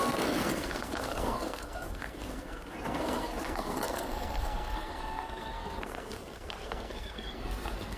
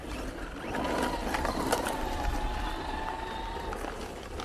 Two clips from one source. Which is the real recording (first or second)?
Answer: second